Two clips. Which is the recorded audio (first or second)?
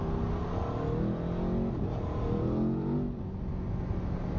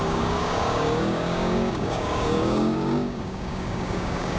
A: first